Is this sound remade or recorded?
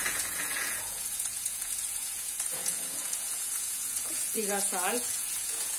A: remade